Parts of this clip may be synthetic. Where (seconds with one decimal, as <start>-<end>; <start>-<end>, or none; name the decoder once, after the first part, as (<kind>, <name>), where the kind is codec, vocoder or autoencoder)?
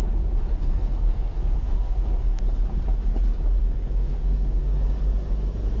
0.5-2.4 (codec, SNAC); 3.6-4.6